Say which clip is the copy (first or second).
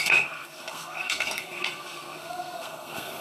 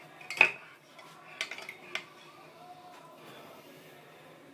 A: first